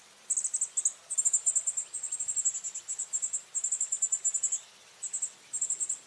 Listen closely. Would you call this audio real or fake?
real